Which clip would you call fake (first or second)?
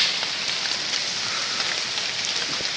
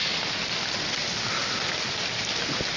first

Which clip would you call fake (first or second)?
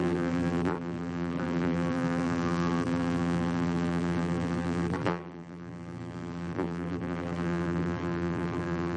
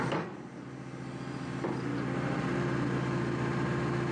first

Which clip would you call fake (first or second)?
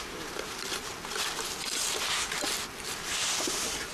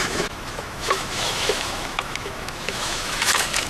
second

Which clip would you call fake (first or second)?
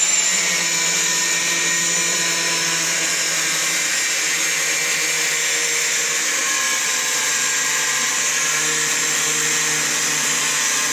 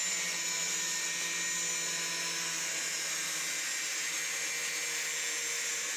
first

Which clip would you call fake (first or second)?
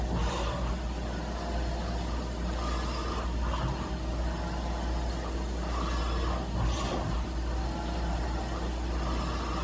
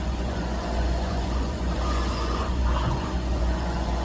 second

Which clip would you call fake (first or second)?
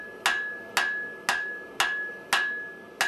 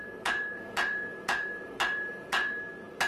second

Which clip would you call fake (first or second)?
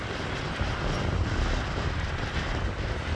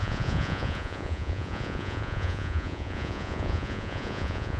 second